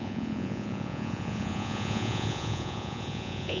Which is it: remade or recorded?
remade